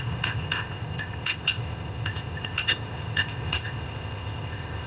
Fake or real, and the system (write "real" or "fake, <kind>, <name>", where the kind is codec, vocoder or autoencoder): fake, codec, ZipCodec